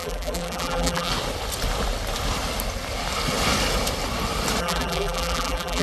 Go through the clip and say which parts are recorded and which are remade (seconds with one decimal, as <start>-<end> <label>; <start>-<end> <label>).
0.0-1.1 remade; 1.1-4.6 recorded; 4.6-5.8 remade